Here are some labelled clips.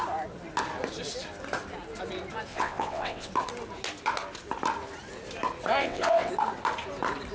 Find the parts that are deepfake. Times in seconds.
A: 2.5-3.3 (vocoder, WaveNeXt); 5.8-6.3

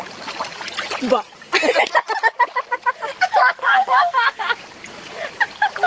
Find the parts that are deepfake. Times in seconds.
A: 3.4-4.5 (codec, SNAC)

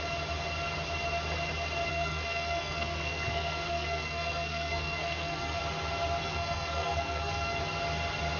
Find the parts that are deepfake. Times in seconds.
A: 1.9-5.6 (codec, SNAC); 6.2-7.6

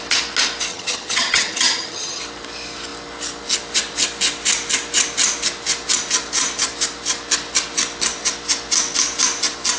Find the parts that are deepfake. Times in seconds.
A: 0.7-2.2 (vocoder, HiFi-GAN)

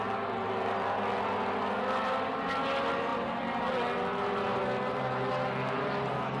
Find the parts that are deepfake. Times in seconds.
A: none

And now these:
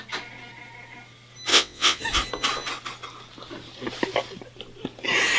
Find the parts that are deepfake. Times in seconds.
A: 1.5-2.0 (vocoder, WaveNeXt)